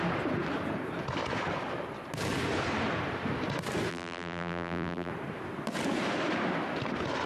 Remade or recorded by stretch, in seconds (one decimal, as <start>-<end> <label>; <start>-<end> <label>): 0.0-3.9 recorded; 3.9-5.1 remade; 5.1-7.3 recorded